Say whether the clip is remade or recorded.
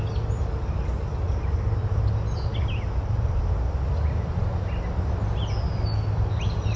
recorded